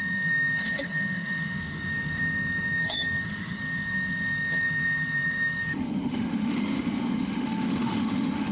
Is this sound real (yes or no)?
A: no